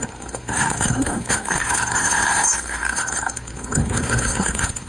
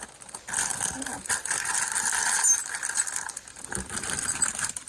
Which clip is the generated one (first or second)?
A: first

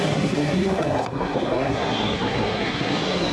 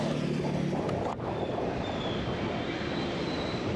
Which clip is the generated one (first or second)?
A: first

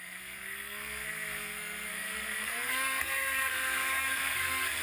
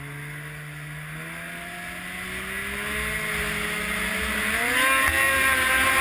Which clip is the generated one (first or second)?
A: first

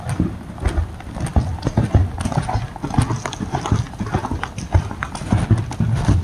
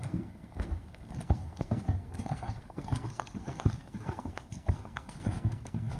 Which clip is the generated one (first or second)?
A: second